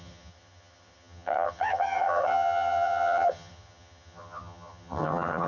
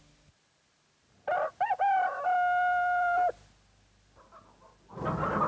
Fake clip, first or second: first